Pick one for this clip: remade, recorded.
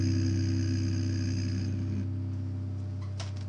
recorded